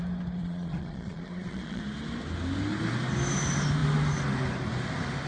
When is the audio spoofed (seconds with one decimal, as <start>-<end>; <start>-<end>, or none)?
0.4-1.8